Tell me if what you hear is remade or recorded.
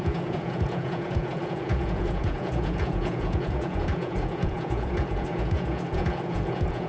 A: remade